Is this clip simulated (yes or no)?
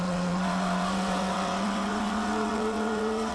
yes